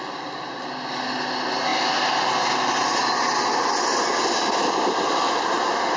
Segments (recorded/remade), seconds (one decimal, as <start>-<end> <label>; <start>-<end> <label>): 0.0-6.0 recorded